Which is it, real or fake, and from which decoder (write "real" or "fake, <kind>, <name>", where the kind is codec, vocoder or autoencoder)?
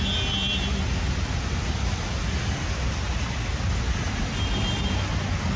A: real